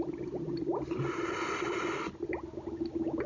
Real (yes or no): yes